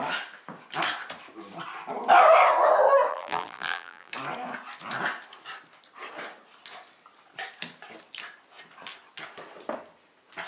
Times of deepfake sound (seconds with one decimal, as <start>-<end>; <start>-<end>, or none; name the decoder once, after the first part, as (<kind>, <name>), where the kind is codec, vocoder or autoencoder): 3.1-4.1 (vocoder, BigVGAN v2)